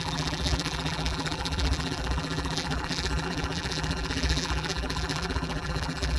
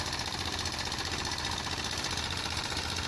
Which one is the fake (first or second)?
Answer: first